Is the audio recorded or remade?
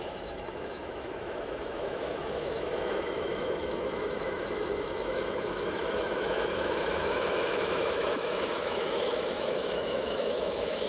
remade